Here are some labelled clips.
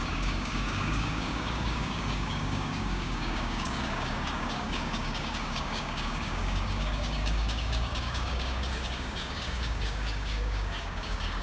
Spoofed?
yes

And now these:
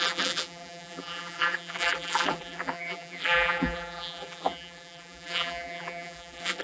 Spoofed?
yes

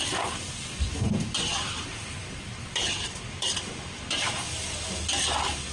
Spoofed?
no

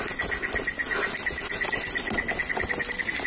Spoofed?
no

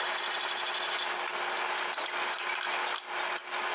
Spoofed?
no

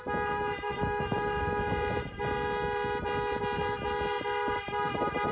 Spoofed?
no